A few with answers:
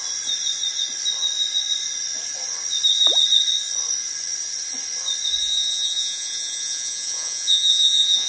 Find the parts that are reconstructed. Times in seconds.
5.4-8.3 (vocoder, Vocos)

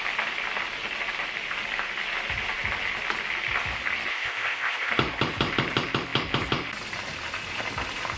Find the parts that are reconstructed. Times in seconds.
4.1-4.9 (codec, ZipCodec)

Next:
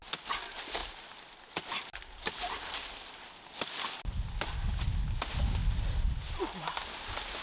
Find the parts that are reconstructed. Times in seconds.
none

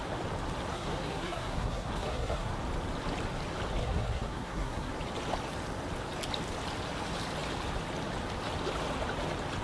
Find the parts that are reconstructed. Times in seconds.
0.7-2.5 (codec, SNAC); 3.8-4.9

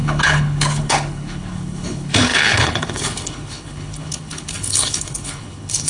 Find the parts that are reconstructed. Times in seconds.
0.0-5.9 (codec, HILCodec)